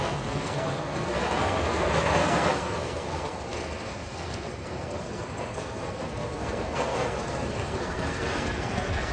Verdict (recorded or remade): remade